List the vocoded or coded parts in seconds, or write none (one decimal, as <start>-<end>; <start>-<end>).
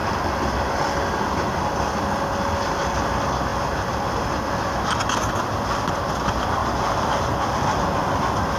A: none